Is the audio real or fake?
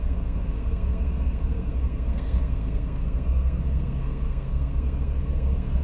fake